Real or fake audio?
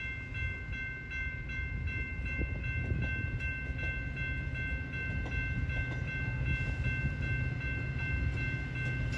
real